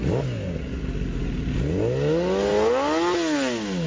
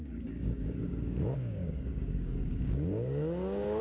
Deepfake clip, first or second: second